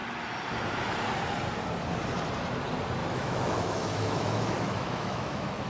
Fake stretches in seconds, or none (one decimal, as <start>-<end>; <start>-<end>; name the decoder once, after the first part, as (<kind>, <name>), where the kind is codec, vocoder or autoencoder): 3.0-5.7 (autoencoder, DAC-VAE)